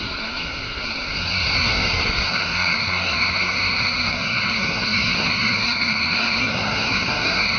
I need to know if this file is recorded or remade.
remade